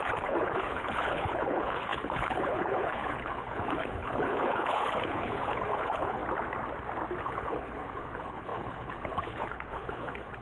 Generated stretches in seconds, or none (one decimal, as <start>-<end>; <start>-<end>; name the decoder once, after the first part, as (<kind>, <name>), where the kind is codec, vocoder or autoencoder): 0.0-6.2 (codec, HILCodec); 7.2-10.4